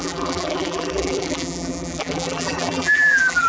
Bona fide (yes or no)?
no